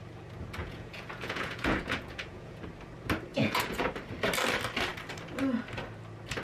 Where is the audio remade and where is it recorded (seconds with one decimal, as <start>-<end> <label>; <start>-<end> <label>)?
0.0-0.6 recorded; 0.6-2.6 remade; 2.6-3.3 recorded; 3.3-3.9 remade; 3.9-6.4 recorded